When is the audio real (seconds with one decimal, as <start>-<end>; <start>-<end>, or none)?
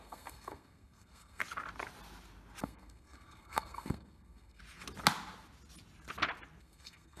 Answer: 1.4-2.6; 4.6-6.6